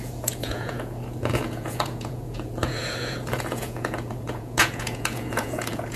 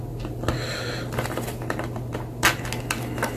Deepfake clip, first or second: first